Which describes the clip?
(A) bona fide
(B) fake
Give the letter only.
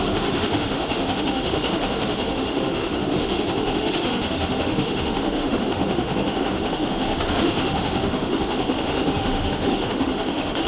B